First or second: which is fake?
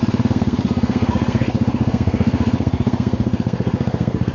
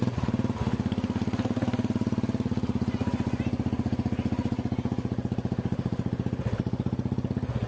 first